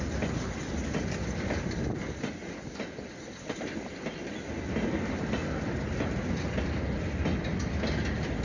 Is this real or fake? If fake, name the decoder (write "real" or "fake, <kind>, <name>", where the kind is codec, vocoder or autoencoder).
real